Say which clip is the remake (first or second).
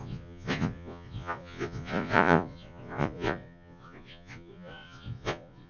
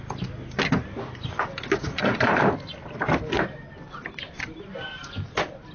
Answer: first